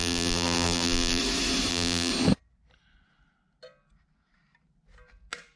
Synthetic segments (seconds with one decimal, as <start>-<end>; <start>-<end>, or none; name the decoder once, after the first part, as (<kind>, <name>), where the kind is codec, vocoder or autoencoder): 0.0-1.2 (vocoder, BigVGAN v2); 1.7-2.1